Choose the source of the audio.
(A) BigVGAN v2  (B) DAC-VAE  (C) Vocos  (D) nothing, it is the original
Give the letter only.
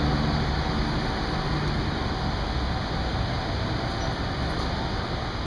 D